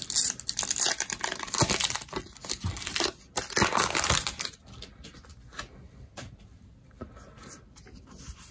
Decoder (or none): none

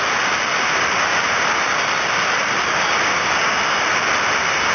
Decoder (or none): none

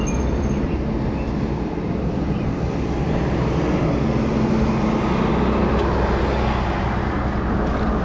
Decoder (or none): none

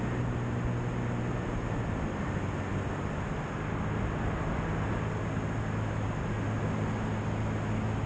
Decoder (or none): none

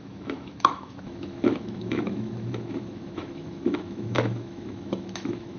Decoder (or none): autoencoder, DAC-VAE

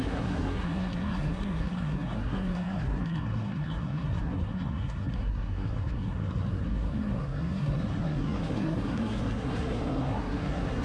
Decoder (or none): codec, SNAC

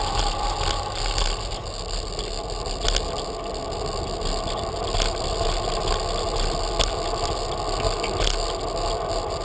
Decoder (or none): none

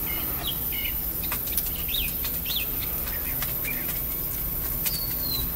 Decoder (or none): none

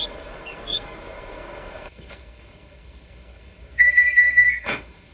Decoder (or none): codec, SNAC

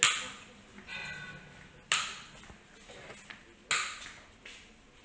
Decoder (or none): none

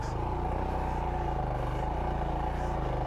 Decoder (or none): none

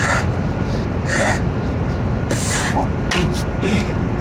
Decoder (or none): none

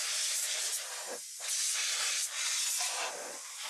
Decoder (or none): none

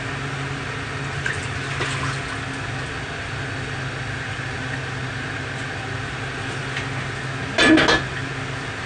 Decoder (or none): none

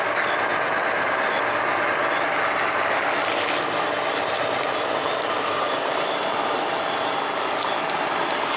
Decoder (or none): none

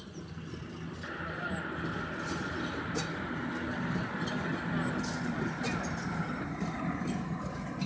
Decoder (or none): none